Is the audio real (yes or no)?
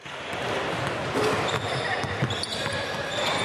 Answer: yes